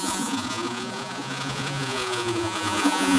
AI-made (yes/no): yes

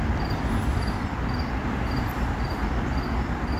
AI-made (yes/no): no